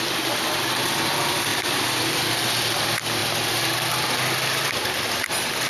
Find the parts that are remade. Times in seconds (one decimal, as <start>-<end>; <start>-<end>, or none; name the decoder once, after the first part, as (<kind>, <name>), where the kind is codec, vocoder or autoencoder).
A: 1.5-2.3 (vocoder, BigVGAN v2)